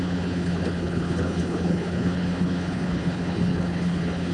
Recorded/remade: remade